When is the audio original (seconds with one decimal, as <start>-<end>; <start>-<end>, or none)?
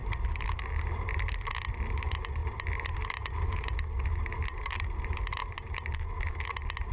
0.0-6.9